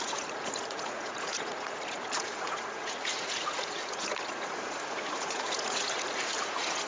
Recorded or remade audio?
remade